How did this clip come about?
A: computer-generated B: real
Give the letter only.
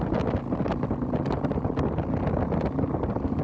B